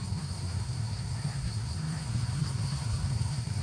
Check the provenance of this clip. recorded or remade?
remade